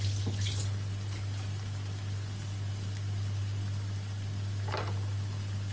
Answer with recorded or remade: recorded